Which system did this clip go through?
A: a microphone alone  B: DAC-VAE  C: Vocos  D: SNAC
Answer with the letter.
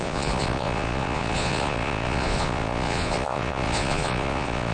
C